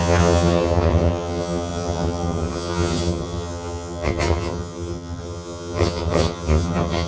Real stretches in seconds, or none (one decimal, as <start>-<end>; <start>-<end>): none